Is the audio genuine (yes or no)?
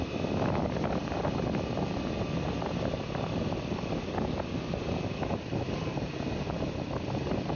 yes